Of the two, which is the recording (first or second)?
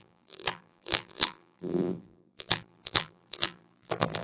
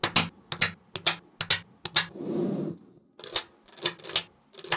second